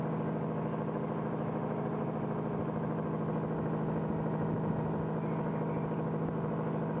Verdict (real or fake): real